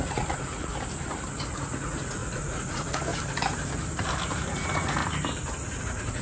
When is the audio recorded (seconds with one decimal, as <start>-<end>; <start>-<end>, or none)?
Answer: 0.7-1.5; 3.1-4.4; 5.0-5.8